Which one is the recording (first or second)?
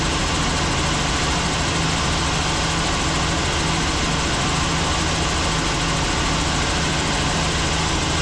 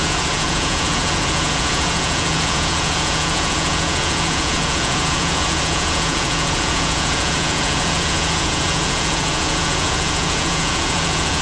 first